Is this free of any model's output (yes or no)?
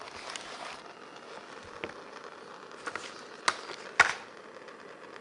yes